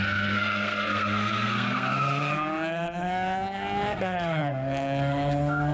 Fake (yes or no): yes